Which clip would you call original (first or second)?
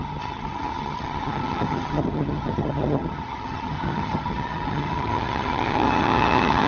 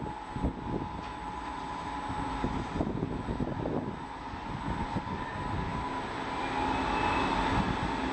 second